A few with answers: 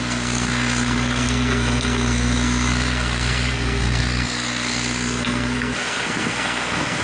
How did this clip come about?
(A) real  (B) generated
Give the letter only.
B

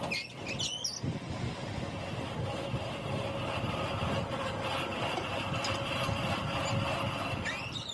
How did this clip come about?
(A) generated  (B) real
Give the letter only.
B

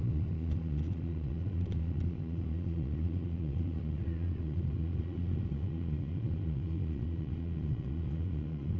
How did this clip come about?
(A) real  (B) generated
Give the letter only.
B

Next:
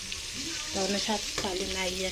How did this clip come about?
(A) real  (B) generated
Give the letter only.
A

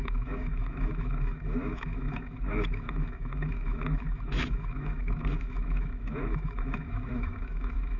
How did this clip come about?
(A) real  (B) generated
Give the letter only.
B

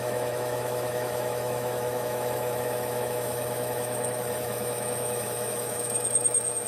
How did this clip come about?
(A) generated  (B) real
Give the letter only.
A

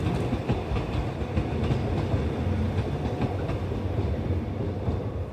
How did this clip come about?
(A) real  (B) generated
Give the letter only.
A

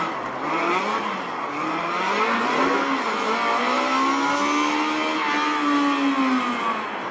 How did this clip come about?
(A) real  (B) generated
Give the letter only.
A